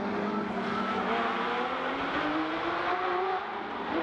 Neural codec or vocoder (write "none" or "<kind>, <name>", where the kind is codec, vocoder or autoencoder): none